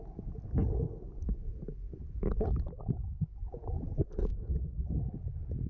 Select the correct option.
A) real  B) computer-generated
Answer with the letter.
A